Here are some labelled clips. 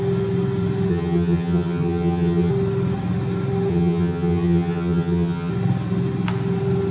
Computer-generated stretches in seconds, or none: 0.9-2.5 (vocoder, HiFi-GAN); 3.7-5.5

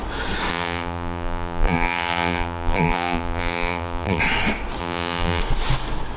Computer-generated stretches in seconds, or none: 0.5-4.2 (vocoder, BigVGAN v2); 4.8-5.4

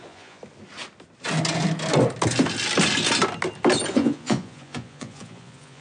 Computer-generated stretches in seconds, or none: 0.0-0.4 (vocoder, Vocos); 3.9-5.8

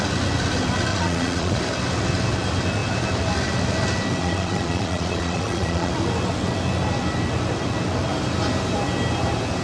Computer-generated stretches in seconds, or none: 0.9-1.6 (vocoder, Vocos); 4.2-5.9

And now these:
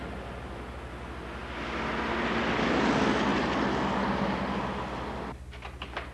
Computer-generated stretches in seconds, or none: none

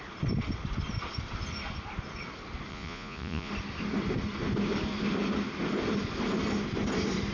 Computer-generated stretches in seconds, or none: 2.7-3.5 (vocoder, Vocos)

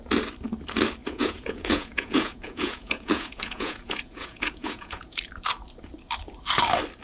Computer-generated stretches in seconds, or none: 1.0-5.2 (vocoder, Vocos)

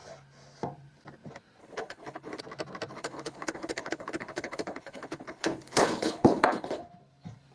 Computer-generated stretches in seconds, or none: 1.6-2.4 (codec, HILCodec); 2.9-6.8